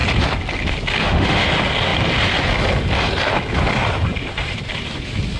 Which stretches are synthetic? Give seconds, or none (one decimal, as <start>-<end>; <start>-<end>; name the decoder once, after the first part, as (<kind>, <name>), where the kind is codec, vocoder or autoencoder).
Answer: 1.0-1.5 (autoencoder, DAC-VAE)